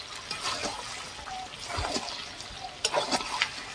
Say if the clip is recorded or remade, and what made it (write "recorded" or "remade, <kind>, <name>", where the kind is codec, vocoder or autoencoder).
recorded